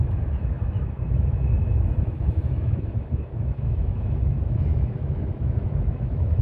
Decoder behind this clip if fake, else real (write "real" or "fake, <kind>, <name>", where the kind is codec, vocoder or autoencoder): fake, autoencoder, DAC-VAE